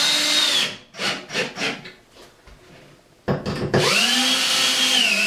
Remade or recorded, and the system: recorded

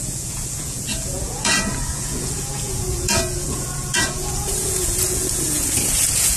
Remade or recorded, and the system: remade, vocoder, Vocos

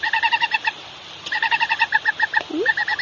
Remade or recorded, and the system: recorded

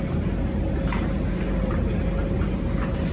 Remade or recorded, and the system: recorded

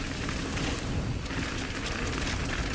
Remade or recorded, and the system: recorded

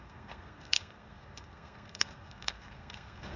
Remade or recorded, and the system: remade, codec, SNAC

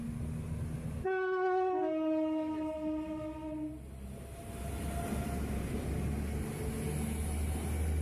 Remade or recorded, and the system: recorded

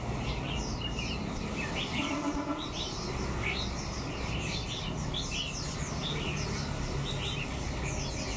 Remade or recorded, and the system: recorded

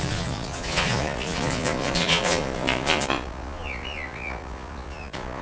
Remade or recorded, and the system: remade, vocoder, Vocos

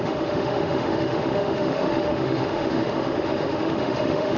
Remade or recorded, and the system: remade, autoencoder, DAC-VAE